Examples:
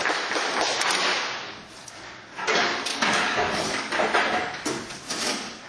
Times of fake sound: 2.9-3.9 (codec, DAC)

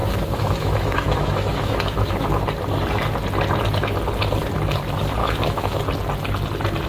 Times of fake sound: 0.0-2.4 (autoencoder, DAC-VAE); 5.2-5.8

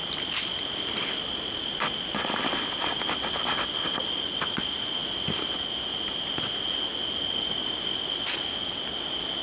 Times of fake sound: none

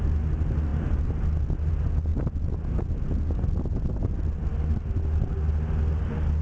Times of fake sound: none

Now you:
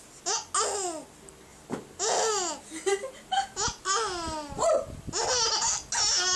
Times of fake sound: none